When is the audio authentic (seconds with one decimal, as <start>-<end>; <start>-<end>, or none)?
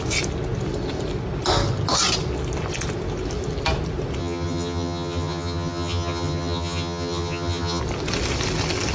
0.0-4.2; 7.8-8.9